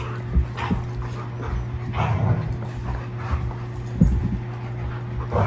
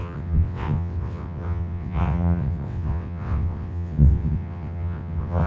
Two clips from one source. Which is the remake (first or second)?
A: second